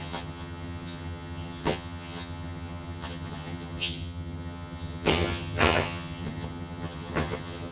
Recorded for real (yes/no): no